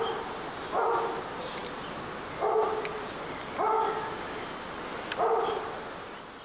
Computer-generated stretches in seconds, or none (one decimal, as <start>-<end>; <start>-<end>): none